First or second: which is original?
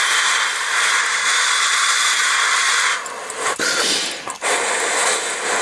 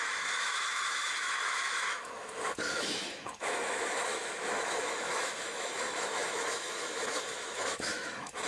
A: first